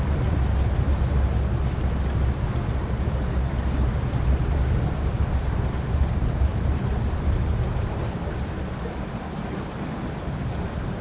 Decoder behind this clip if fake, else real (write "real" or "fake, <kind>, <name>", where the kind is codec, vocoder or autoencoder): real